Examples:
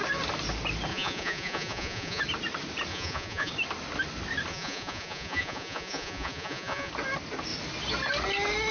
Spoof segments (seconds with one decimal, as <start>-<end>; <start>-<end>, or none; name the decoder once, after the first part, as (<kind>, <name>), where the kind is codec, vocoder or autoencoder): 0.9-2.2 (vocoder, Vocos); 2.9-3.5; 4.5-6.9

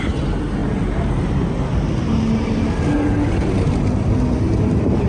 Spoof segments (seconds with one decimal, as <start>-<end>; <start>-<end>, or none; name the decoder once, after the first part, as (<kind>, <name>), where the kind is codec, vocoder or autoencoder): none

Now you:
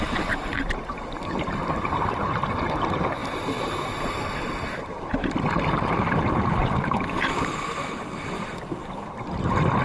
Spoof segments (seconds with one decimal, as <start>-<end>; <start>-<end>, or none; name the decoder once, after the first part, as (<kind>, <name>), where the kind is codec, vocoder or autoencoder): none

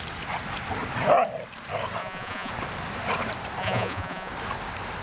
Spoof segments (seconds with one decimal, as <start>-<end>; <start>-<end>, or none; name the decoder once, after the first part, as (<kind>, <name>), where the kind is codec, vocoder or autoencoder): 2.0-2.5 (vocoder, Vocos); 3.6-4.3

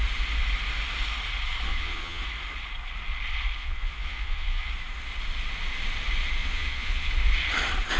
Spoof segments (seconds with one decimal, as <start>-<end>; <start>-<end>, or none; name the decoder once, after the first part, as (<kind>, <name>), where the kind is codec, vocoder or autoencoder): 1.7-2.2 (vocoder, Vocos); 3.6-4.7; 6.4-7.1

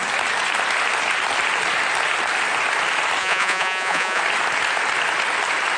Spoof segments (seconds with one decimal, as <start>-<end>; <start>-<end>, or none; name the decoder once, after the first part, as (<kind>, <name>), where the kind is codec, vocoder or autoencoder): 3.2-4.2 (vocoder, Vocos)

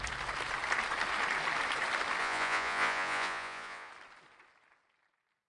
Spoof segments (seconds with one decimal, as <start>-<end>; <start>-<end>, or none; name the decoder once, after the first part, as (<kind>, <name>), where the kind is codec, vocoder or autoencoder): 2.2-3.9 (vocoder, Vocos)

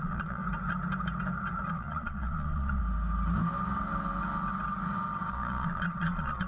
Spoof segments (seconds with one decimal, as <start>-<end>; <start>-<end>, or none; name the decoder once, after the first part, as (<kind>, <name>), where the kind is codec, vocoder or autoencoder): 0.0-0.4 (vocoder, Vocos); 1.7-2.8; 5.3-6.5